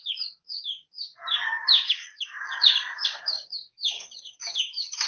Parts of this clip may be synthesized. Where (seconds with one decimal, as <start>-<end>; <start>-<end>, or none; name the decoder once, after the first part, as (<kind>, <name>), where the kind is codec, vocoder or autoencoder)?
0.0-5.1 (codec, DAC)